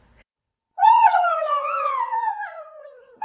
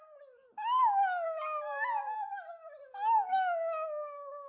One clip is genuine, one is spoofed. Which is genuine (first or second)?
second